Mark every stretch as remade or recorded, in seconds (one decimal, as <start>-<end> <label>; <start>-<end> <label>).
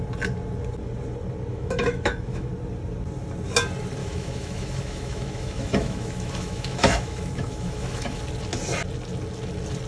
0.0-1.5 recorded; 1.5-2.5 remade; 2.5-4.0 recorded; 4.0-8.2 remade; 8.2-9.9 recorded